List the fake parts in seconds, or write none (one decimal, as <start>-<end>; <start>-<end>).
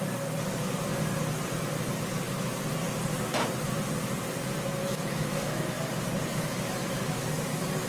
4.8-5.8; 6.3-7.3